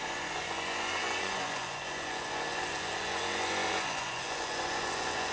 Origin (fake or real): fake